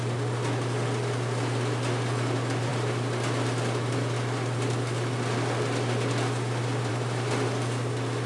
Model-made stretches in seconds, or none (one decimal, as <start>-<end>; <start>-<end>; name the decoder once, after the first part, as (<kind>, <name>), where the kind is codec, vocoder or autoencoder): none